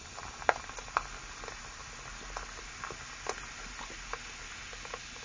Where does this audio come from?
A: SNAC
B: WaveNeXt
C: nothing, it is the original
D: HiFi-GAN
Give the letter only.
C